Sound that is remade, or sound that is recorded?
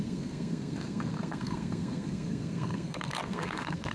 remade